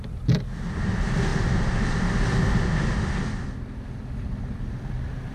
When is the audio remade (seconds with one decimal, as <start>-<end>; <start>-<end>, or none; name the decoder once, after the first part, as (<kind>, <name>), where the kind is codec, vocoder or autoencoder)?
none